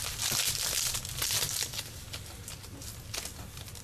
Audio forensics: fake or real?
real